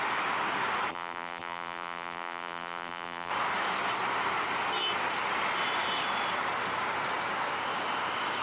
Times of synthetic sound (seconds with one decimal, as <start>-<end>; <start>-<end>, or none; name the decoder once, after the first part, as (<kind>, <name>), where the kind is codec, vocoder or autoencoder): 0.9-3.3 (vocoder, BigVGAN v2)